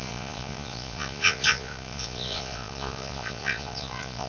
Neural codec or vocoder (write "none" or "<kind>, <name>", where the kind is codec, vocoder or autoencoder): vocoder, Vocos